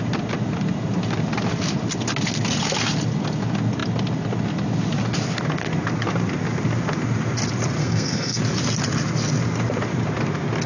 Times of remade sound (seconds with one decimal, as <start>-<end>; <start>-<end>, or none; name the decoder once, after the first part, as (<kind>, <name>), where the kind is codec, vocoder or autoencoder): 7.8-8.4 (codec, SNAC)